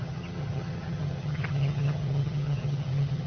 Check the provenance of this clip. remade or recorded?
remade